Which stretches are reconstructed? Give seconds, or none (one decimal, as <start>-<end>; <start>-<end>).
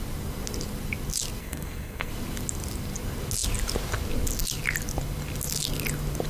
1.4-2.1